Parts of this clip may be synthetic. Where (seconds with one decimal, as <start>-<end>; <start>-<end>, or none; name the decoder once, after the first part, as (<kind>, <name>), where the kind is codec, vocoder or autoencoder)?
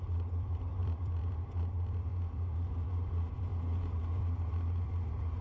0.0-2.1 (vocoder, BigVGAN v2); 2.7-3.5; 4.2-5.4